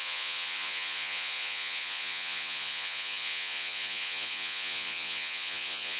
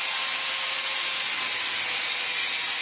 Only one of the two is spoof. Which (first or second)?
first